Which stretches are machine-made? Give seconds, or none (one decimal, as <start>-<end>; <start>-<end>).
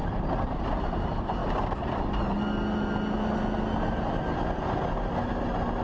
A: none